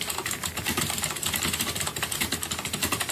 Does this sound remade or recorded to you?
recorded